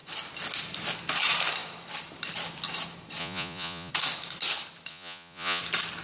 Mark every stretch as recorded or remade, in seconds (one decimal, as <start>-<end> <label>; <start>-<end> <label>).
0.0-3.2 recorded; 3.2-3.9 remade; 3.9-4.9 recorded; 4.9-5.6 remade; 5.6-6.0 recorded